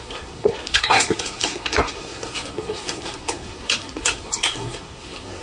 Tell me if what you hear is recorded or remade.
remade